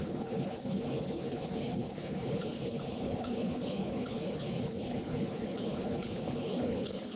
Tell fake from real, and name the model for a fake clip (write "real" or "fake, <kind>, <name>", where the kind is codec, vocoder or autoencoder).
fake, codec, HILCodec